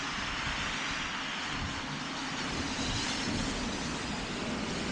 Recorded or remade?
recorded